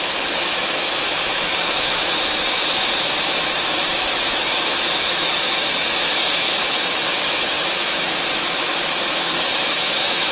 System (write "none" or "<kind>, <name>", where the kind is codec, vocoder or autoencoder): autoencoder, DAC-VAE